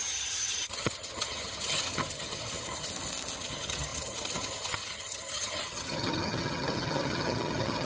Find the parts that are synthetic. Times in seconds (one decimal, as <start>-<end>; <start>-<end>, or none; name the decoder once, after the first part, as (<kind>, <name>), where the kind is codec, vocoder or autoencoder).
0.0-2.9 (vocoder, HiFi-GAN); 3.4-7.9